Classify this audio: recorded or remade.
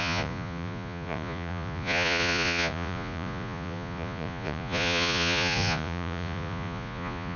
remade